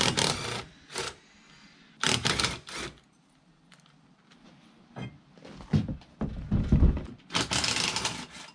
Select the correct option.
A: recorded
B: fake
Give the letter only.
A